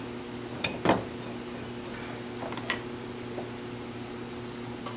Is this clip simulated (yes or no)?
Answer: no